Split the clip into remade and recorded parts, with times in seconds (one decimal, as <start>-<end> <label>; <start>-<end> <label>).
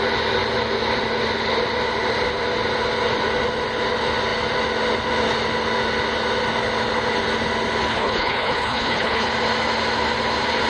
0.0-7.9 recorded; 7.9-9.3 remade; 9.3-10.7 recorded